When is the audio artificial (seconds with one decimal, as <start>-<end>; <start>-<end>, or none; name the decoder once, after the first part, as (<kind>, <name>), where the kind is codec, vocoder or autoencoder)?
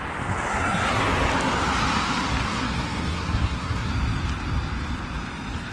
0.5-1.0 (codec, SNAC); 2.4-3.9